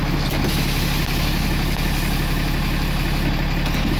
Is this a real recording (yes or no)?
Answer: yes